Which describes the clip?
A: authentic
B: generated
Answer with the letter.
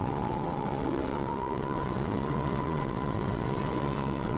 B